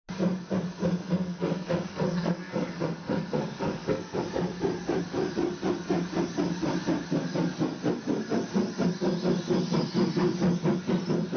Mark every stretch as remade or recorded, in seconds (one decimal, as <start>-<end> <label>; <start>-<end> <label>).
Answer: 0.0-1.0 recorded; 1.0-4.2 remade; 4.2-11.4 recorded